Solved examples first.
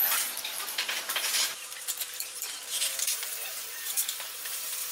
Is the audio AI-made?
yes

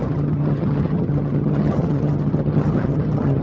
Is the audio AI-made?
yes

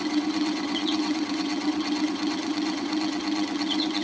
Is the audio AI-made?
yes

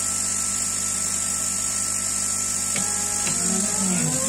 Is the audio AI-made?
no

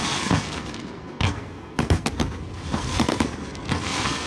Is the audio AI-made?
yes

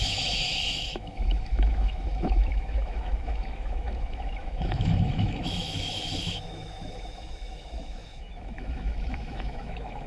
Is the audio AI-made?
yes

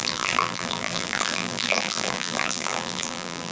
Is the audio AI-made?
yes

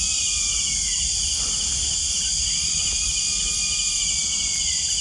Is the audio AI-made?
no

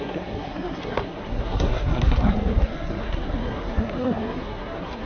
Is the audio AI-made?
yes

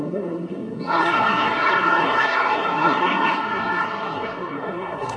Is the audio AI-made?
yes